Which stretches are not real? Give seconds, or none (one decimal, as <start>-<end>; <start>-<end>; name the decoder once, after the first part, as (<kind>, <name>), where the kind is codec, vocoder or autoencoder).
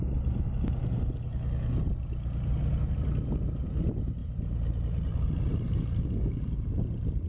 4.2-6.8 (vocoder, BigVGAN v2)